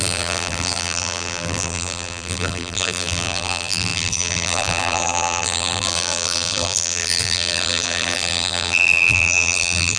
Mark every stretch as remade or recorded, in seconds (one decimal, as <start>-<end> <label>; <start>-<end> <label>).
0.0-10.0 remade